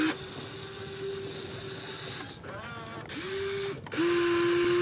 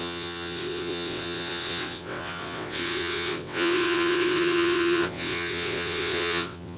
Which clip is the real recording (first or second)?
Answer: first